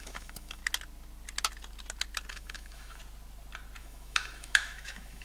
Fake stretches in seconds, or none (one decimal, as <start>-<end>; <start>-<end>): 0.0-0.6; 2.3-3.0; 3.8-5.2